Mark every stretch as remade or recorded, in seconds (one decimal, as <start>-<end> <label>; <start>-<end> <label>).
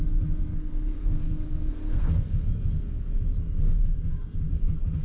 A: 0.0-0.5 recorded; 0.5-3.1 remade; 3.1-5.0 recorded